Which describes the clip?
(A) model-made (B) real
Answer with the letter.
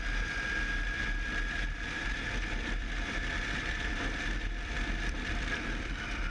A